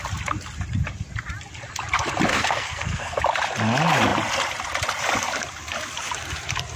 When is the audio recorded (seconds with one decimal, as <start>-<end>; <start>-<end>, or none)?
0.0-2.3; 3.2-6.8